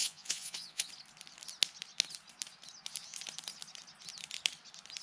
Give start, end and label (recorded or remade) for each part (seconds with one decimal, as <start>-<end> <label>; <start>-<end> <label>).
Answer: 0.0-0.9 remade; 0.9-5.0 recorded